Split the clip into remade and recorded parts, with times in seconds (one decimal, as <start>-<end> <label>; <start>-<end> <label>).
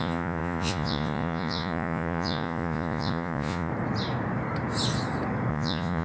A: 0.0-3.7 remade; 3.7-5.5 recorded; 5.5-6.0 remade